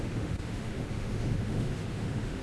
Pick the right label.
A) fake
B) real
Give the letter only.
A